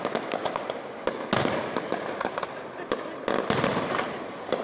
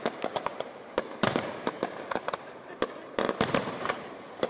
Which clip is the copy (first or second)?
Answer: second